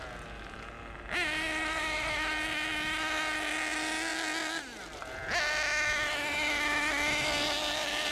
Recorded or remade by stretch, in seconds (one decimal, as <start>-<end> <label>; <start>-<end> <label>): 0.0-8.1 recorded